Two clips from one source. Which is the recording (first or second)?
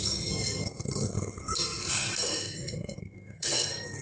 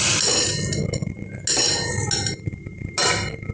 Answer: second